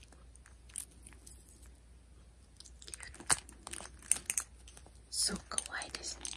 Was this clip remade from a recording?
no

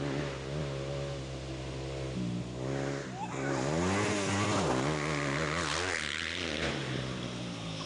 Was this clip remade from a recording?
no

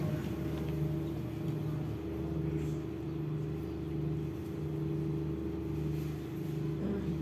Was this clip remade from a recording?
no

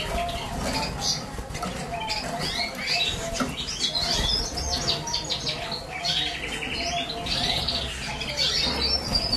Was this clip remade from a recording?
no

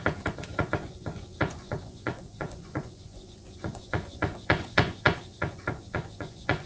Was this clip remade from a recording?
yes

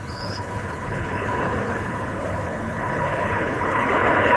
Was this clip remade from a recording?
yes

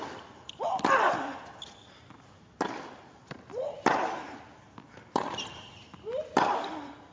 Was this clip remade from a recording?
no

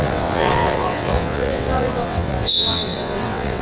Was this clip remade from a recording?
yes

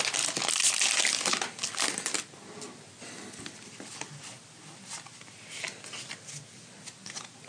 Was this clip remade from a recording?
no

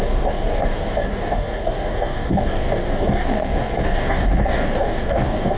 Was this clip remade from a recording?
yes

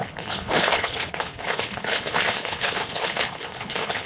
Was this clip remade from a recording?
yes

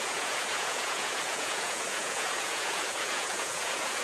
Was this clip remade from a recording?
yes